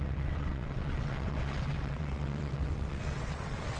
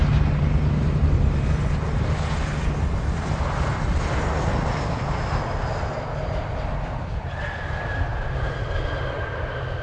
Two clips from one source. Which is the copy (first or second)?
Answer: first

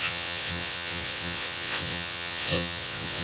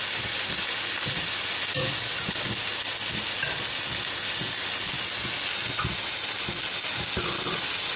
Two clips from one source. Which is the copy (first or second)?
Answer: first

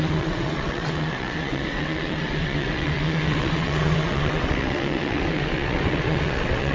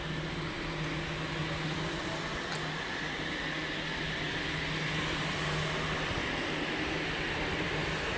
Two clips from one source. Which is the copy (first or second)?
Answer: first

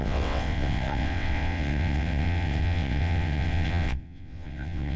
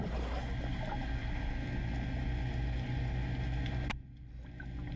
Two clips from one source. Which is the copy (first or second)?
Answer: first